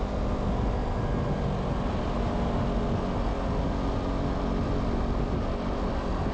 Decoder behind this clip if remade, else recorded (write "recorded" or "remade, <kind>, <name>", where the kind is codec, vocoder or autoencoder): recorded